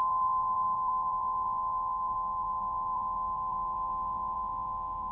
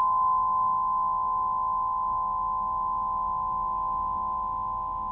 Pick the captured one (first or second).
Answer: second